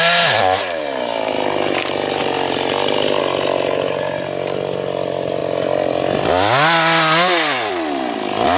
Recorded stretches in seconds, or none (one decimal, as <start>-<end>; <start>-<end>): 0.0-8.6